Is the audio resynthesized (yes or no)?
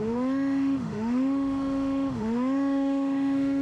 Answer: yes